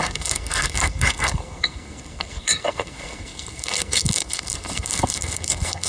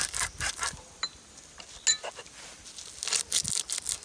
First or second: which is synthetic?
first